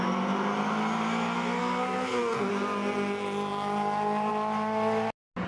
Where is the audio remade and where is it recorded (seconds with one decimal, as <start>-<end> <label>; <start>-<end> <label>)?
0.0-1.6 recorded; 1.6-2.5 remade; 2.5-5.5 recorded